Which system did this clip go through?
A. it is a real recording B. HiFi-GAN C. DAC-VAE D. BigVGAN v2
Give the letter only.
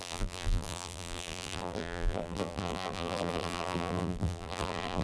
D